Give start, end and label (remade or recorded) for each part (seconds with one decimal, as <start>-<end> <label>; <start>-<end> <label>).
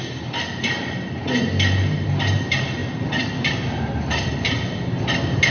0.0-0.6 recorded; 0.6-1.2 remade; 1.2-1.8 recorded; 1.8-2.8 remade; 2.8-5.5 recorded